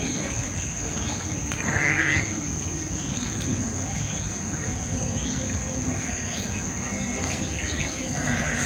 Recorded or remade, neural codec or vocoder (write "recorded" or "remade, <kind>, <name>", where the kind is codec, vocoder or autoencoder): remade, codec, SNAC